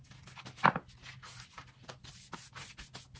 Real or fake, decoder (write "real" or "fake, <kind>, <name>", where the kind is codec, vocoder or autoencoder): real